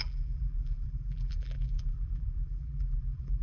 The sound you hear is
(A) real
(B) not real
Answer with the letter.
B